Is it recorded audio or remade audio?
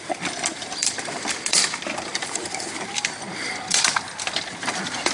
remade